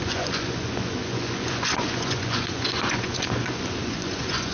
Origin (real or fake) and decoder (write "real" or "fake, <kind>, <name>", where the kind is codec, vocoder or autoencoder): fake, vocoder, Vocos